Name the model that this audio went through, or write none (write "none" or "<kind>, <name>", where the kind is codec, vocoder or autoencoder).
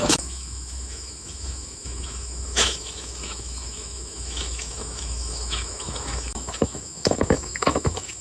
autoencoder, DAC-VAE